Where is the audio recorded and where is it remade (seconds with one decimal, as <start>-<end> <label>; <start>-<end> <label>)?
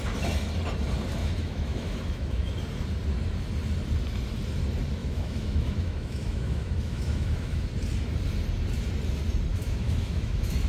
0.0-1.2 recorded; 1.2-2.5 remade; 2.5-5.0 recorded; 5.0-7.7 remade; 7.7-9.5 recorded; 9.5-10.7 remade